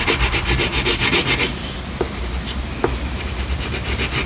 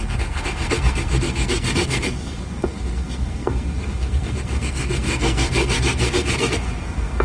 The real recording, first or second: first